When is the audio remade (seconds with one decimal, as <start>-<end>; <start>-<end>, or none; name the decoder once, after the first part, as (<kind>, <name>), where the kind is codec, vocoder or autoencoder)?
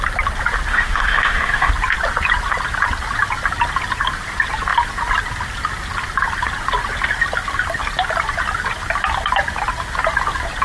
0.7-1.7 (autoencoder, DAC-VAE)